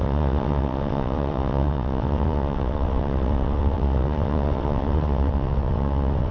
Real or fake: fake